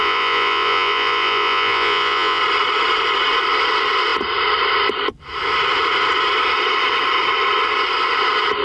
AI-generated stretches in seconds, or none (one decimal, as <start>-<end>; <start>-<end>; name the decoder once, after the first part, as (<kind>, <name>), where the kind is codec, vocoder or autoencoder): 0.0-2.4 (vocoder, Vocos)